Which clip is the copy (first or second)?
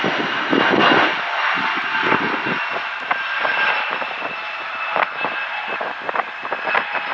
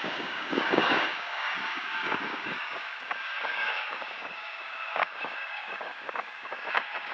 second